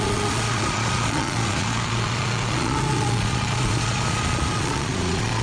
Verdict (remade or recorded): remade